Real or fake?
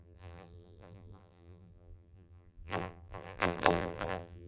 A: fake